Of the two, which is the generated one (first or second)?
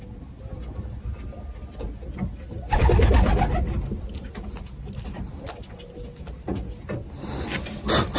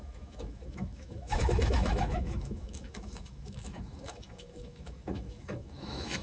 second